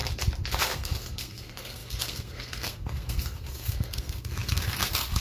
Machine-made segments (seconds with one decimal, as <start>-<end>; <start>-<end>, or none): 0.6-5.2

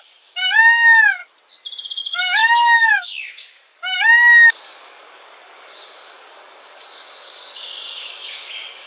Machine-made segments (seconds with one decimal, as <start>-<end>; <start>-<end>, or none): 0.0-1.2; 2.0-8.9

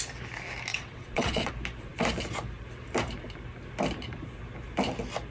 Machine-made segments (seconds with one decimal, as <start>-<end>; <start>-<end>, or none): 0.7-1.5